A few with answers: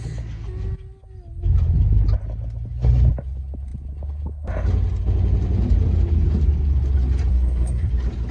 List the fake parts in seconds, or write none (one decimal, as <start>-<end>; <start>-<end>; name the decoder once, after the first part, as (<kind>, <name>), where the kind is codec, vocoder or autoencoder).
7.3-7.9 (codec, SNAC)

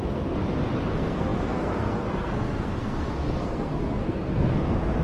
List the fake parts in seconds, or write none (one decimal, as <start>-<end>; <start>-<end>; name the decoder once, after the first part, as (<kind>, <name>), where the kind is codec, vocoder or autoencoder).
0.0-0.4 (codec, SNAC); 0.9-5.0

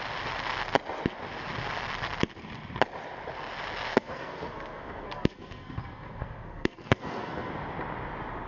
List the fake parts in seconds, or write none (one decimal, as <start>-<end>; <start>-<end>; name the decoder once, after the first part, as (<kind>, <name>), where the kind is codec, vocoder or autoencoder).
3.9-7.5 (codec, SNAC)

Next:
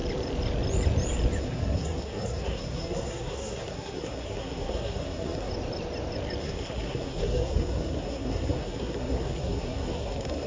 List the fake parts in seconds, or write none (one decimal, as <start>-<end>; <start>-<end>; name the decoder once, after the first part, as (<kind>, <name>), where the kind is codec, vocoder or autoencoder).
1.4-5.5 (codec, SNAC); 6.4-10.5

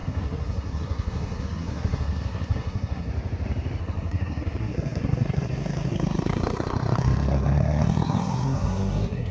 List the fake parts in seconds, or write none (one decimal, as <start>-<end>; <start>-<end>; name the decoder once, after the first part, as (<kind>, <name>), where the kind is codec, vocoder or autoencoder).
0.0-3.1 (codec, SNAC); 3.8-9.3